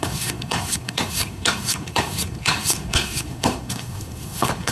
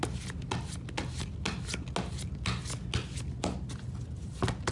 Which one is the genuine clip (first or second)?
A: second